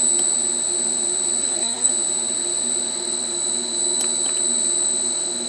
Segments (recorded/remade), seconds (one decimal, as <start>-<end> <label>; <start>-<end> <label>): 0.0-1.4 recorded; 1.4-1.9 remade; 1.9-5.5 recorded